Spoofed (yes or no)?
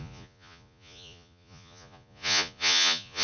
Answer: yes